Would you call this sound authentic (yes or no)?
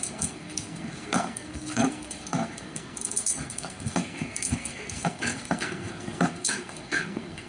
no